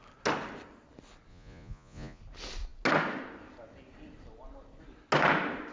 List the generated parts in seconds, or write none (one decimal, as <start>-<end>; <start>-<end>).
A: 1.3-2.2